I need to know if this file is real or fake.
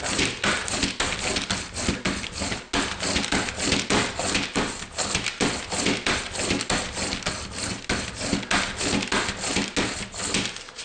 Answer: real